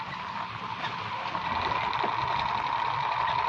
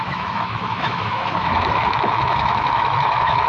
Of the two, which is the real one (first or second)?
first